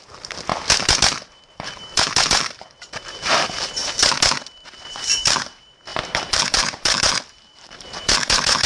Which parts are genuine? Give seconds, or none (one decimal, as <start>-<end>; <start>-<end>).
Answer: 0.5-1.5; 3.8-4.8

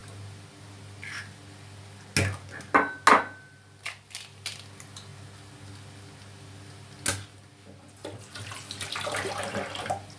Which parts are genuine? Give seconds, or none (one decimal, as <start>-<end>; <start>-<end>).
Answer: 0.0-10.2

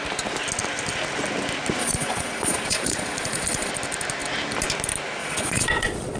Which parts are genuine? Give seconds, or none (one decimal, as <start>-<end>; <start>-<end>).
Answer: 0.0-1.8; 3.7-5.2